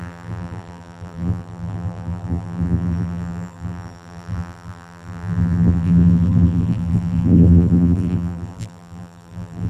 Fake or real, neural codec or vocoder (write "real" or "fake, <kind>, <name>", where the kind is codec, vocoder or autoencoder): fake, vocoder, BigVGAN v2